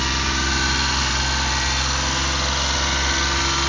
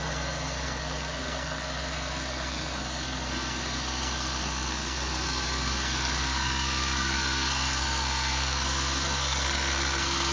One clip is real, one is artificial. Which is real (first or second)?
first